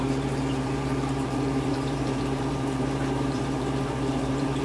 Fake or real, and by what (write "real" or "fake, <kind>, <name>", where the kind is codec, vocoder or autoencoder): fake, vocoder, BigVGAN v2